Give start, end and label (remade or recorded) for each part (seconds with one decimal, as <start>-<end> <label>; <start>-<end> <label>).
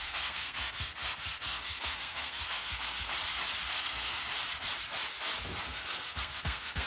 0.0-3.1 remade; 3.1-3.7 recorded; 3.7-4.2 remade; 4.2-5.6 recorded; 5.6-6.9 remade